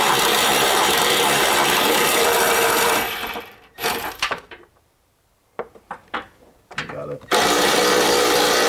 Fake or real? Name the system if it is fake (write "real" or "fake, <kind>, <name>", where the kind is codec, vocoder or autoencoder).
fake, vocoder, BigVGAN v2